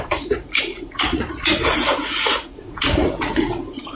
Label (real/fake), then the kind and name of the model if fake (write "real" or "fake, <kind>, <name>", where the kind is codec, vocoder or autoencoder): fake, vocoder, Vocos